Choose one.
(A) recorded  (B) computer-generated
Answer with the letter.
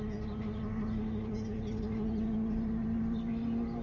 A